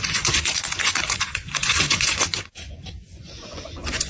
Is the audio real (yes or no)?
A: no